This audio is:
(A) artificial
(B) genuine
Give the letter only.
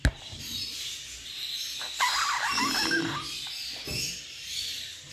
B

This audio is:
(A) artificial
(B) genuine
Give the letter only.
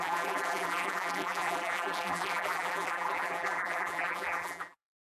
A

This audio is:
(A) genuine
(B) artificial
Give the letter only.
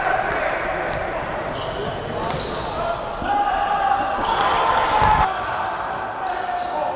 A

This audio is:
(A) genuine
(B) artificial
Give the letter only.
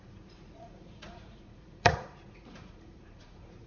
B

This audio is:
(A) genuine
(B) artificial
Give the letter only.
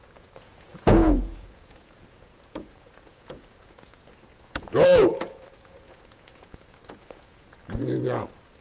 B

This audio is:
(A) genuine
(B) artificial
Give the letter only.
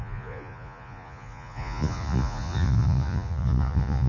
B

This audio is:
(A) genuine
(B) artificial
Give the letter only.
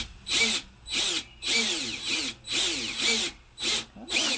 A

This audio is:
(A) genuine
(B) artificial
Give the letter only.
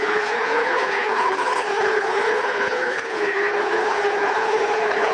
B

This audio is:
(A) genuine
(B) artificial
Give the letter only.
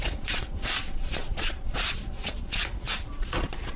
B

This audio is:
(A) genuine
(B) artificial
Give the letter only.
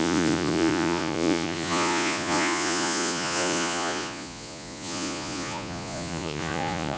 B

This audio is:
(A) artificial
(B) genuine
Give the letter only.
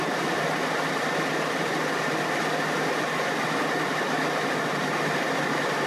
B